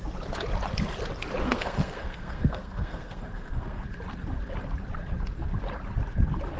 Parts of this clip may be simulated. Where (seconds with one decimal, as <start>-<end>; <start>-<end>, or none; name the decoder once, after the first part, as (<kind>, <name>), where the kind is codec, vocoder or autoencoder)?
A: 1.4-3.8 (codec, SNAC)